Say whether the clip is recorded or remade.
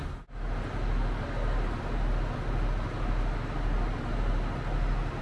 recorded